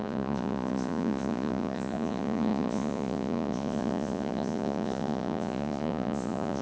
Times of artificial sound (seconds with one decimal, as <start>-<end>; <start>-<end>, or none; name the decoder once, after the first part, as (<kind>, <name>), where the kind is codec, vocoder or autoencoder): 0.0-6.6 (vocoder, Vocos)